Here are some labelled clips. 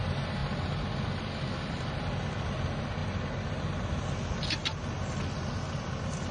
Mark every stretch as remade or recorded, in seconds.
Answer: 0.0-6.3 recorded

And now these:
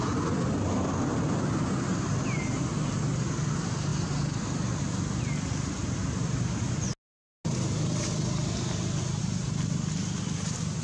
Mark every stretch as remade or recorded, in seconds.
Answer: 0.0-10.8 recorded

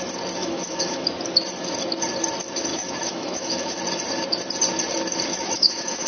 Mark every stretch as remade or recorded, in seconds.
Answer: 0.0-0.4 recorded; 0.4-1.1 remade; 1.1-2.7 recorded; 2.7-3.8 remade; 3.8-5.3 recorded; 5.3-6.1 remade

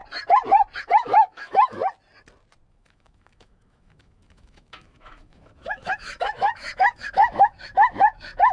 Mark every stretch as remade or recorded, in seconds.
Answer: 0.0-0.8 recorded; 0.8-1.8 remade; 1.8-2.7 recorded; 2.7-8.5 remade